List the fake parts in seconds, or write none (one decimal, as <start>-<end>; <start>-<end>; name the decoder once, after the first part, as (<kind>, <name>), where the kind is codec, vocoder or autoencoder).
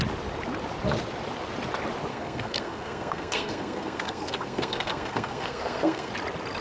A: 2.1-6.1 (codec, SNAC)